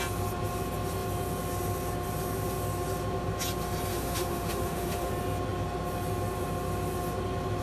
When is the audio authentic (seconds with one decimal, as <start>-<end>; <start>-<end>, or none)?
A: 0.0-3.9; 5.1-7.6